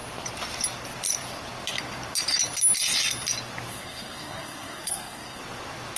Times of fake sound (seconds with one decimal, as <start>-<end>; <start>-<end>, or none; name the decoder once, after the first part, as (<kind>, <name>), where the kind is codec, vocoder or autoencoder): 3.7-5.4 (codec, SNAC)